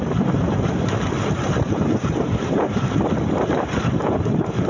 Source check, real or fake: fake